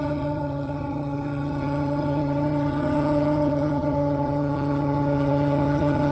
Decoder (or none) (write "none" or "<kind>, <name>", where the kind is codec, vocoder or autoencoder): vocoder, HiFi-GAN